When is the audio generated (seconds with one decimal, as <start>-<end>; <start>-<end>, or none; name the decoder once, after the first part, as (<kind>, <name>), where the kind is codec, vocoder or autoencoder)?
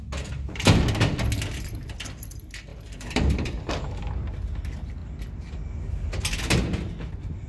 2.7-4.2 (vocoder, BigVGAN v2)